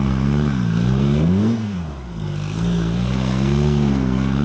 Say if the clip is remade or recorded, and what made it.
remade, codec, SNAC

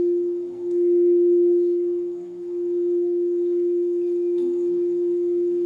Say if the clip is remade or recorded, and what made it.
remade, codec, SNAC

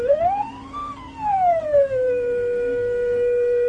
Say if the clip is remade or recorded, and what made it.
remade, codec, SNAC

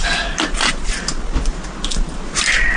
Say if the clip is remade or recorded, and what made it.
recorded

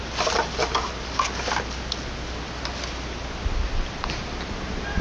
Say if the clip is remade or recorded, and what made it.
recorded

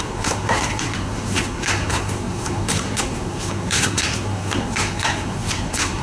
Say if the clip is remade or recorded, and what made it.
remade, codec, SNAC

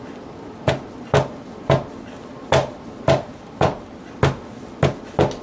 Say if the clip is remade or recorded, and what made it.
recorded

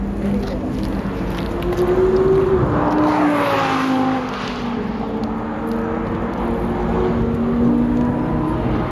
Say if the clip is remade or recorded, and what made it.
recorded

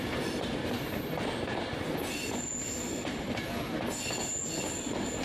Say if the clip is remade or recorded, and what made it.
recorded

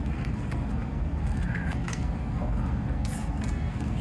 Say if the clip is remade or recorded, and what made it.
remade, codec, SNAC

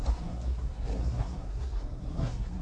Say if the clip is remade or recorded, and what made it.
remade, codec, SNAC